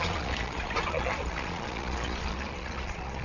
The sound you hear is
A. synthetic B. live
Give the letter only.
A